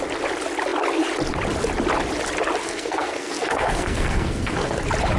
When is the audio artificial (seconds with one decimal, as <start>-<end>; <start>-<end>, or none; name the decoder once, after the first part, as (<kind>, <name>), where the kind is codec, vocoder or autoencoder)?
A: 2.6-4.8 (codec, SNAC)

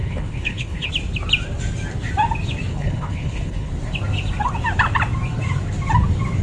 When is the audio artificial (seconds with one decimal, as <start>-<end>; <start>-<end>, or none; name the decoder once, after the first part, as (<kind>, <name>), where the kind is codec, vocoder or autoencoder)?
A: 0.0-0.9 (codec, HILCodec); 2.7-3.7